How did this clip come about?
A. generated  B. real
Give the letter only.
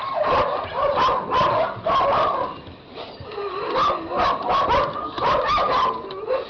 B